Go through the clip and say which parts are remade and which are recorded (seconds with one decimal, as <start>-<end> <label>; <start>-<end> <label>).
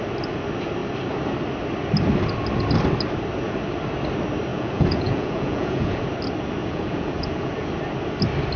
0.0-4.5 recorded; 4.5-6.0 remade; 6.0-6.6 recorded; 6.6-7.7 remade; 7.7-8.6 recorded